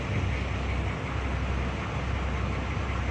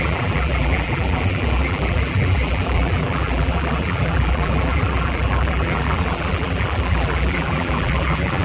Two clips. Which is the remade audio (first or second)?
second